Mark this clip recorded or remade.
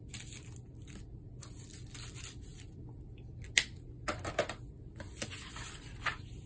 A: recorded